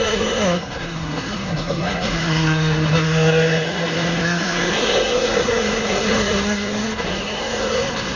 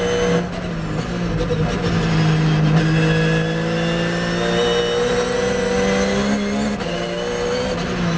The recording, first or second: second